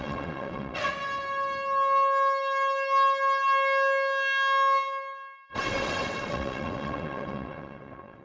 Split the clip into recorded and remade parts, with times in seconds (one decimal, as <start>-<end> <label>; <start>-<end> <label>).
0.0-0.9 remade; 0.9-5.5 recorded; 5.5-8.2 remade

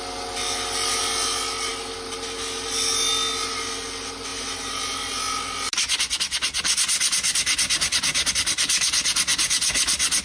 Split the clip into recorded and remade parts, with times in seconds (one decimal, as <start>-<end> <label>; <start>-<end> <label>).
0.0-10.2 recorded

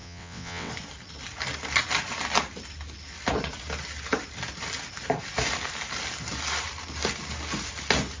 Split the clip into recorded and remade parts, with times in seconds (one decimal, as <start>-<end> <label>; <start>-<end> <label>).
0.0-0.7 remade; 0.7-8.2 recorded

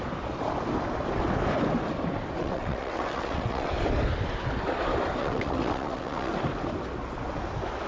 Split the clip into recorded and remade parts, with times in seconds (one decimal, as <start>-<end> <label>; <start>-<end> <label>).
0.0-2.4 recorded; 2.4-3.7 remade; 3.7-5.2 recorded; 5.2-6.3 remade; 6.3-7.9 recorded

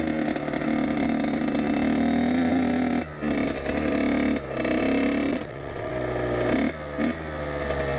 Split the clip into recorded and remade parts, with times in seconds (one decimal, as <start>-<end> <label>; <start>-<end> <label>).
0.0-5.3 recorded; 5.3-5.9 remade; 5.9-8.0 recorded

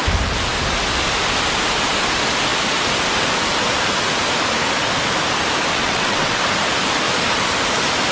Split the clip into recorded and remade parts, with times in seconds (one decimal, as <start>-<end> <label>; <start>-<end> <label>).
0.0-5.7 recorded; 5.7-6.4 remade; 6.4-8.1 recorded